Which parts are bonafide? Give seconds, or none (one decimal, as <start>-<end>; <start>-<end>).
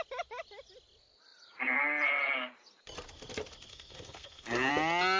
0.0-3.7; 4.7-5.2